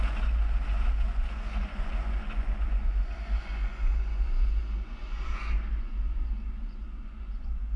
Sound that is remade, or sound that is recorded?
remade